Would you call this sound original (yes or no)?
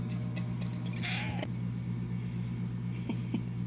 yes